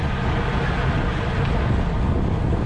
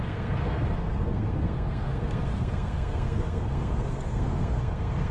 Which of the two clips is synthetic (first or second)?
second